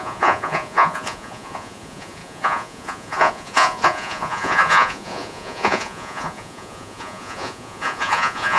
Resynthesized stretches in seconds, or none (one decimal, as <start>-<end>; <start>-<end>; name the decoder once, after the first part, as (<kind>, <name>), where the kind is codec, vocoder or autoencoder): 0.0-8.6 (vocoder, Vocos)